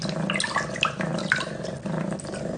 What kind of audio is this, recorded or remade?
recorded